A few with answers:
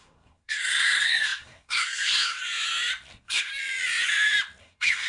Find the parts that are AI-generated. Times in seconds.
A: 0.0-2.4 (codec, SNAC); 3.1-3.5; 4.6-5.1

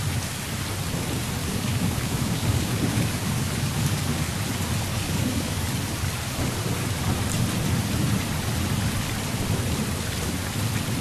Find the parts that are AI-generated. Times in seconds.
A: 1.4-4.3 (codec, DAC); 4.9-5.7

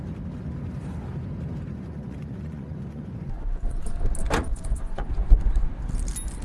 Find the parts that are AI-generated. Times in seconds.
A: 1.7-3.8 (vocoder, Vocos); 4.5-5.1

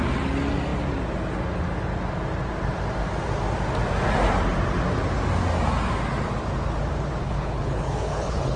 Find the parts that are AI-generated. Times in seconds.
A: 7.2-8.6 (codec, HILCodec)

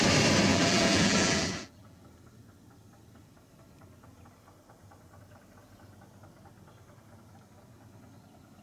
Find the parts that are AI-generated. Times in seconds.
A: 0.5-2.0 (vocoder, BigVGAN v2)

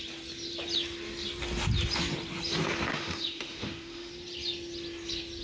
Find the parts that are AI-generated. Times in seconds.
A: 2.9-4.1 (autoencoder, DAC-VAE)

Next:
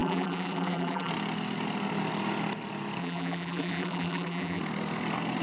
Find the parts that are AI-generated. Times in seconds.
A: 0.0-1.1 (vocoder, BigVGAN v2); 3.0-4.6

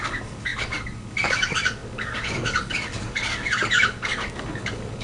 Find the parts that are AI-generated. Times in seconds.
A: 0.0-5.0 (codec, DAC)